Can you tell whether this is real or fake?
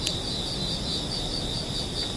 real